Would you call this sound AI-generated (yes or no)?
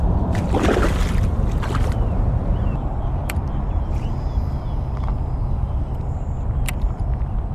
yes